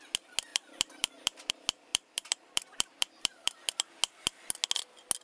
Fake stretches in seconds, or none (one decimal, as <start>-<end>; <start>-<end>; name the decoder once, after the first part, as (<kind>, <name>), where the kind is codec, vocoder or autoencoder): 0.5-1.5 (vocoder, BigVGAN v2); 1.9-3.9